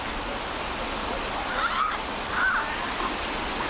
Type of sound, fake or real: real